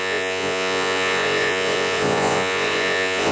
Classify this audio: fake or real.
fake